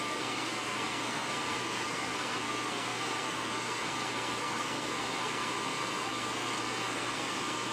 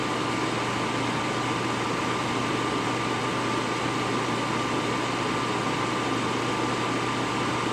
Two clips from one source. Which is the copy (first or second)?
first